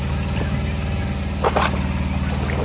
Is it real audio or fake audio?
real